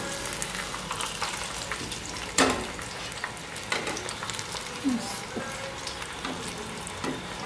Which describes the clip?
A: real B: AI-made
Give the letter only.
A